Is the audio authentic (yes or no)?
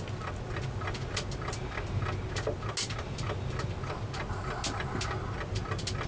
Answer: yes